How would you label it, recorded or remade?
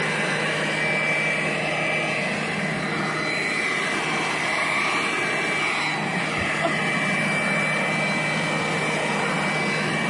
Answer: recorded